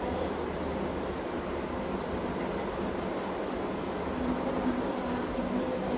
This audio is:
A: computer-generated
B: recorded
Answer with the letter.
B